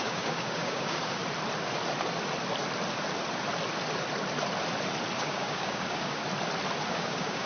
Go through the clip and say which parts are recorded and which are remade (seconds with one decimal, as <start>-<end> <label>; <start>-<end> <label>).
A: 0.0-1.2 remade; 1.2-5.2 recorded; 5.2-6.2 remade; 6.2-6.9 recorded; 6.9-7.5 remade